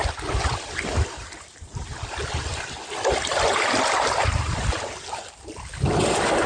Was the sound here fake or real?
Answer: real